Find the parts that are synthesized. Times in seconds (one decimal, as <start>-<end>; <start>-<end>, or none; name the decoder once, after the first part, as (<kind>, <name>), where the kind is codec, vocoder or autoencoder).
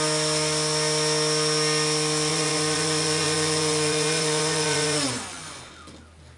2.3-5.6 (vocoder, Vocos)